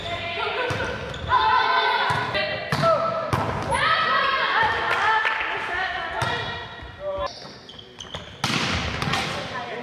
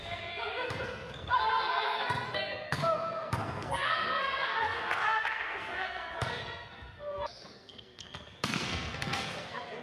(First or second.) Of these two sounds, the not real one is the second